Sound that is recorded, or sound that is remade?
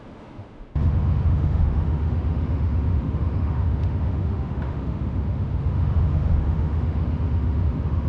remade